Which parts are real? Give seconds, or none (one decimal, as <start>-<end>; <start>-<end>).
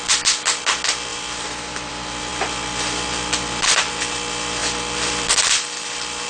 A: 0.0-1.1; 1.9-2.3; 3.8-4.6